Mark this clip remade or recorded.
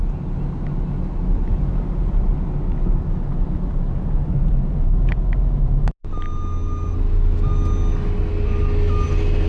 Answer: recorded